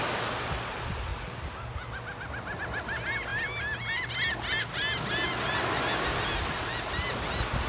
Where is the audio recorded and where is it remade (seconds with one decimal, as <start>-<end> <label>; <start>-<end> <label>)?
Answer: 0.0-7.7 recorded